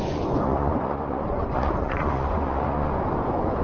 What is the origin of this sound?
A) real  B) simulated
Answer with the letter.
B